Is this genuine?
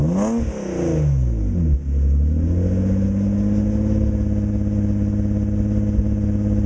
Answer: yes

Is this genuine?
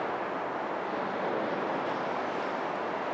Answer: yes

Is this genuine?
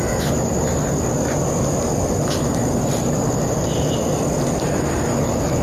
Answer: yes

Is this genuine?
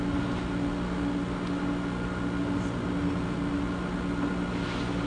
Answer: yes